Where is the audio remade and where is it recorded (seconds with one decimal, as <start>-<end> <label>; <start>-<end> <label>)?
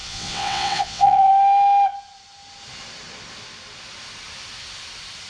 0.0-1.3 remade; 1.3-5.3 recorded